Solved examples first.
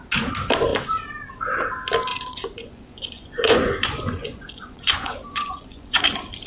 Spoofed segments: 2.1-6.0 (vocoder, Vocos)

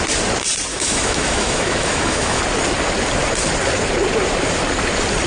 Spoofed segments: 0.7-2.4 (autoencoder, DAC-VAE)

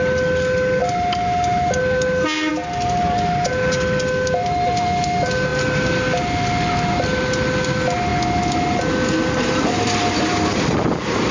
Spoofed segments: none

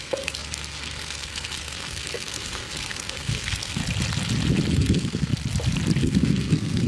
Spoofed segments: 0.0-3.8 (codec, SNAC); 4.7-5.3; 6.0-6.9

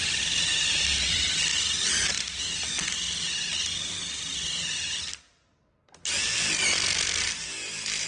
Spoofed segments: none